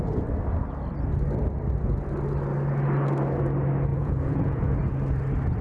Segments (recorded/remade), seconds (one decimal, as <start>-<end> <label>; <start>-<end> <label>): 0.0-3.9 recorded; 3.9-4.7 remade; 4.7-5.6 recorded